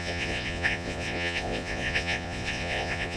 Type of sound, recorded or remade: remade